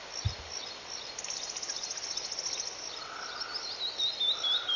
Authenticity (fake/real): real